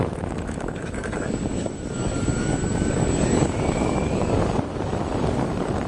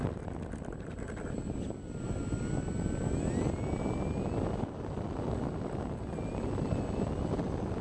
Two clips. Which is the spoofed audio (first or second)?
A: first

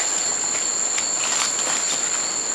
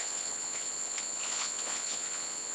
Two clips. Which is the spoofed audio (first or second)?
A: second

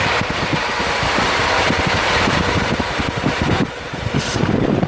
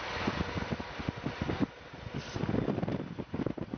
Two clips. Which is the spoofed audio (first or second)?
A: first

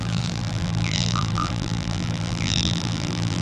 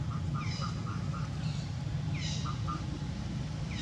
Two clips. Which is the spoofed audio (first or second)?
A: first